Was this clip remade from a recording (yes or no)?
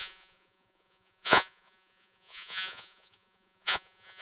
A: yes